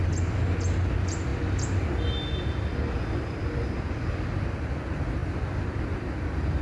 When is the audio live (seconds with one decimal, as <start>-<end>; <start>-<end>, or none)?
0.0-6.6